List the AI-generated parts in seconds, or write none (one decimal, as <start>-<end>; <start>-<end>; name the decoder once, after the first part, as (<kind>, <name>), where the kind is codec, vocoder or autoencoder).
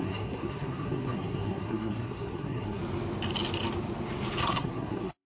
0.0-2.8 (codec, SNAC); 4.4-5.3